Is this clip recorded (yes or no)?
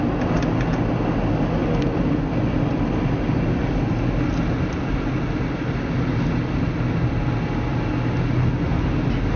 yes